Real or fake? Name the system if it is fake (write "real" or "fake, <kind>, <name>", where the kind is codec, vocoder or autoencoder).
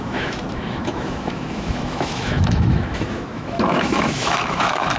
fake, autoencoder, DAC-VAE